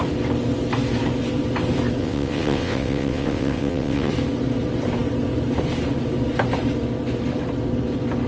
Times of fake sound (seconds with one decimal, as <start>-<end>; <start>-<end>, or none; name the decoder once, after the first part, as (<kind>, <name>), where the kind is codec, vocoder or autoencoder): 2.0-4.1 (vocoder, WaveNeXt)